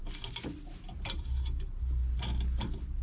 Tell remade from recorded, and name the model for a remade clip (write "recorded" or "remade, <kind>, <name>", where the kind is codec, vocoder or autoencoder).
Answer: recorded